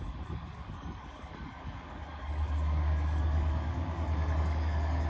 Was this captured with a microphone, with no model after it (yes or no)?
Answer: no